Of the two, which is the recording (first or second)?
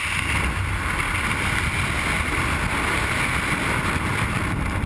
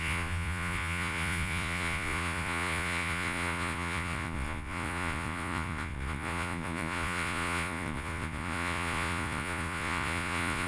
first